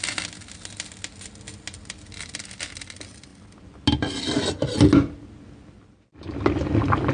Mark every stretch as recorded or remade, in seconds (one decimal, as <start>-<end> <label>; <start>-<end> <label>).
0.0-7.1 recorded